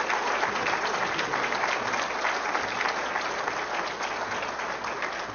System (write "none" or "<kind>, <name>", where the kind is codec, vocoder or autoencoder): none